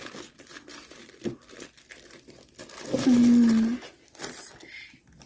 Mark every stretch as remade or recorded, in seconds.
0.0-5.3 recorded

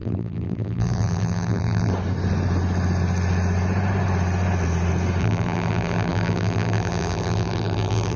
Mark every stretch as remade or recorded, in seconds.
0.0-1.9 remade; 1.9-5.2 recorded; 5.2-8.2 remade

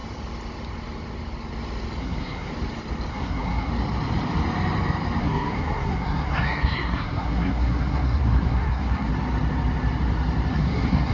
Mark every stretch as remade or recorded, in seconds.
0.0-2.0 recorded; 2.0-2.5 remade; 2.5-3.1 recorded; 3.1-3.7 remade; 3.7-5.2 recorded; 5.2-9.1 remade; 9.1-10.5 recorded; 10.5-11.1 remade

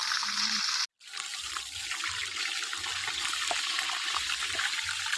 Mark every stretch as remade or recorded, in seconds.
0.0-5.2 recorded

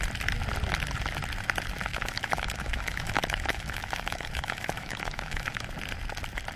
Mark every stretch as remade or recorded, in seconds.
0.0-1.9 recorded; 1.9-5.7 remade; 5.7-6.6 recorded